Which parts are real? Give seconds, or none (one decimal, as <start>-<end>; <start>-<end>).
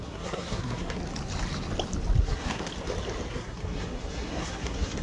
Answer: 1.0-2.2; 2.7-3.3